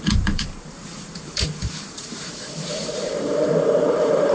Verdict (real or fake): fake